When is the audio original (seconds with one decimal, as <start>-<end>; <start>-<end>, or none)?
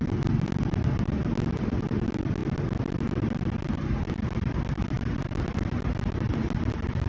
0.0-7.1